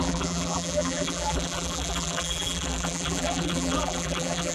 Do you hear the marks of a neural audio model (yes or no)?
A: yes